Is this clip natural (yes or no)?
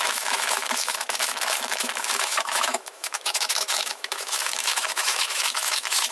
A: no